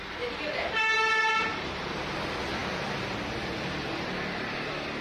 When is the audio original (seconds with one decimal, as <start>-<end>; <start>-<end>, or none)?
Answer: 0.0-1.5; 2.0-5.0